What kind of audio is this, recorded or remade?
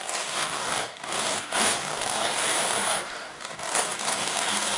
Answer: remade